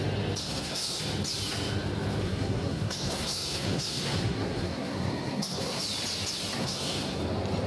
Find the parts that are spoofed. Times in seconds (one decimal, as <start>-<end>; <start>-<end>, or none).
0.4-1.0; 2.2-5.8; 6.6-7.2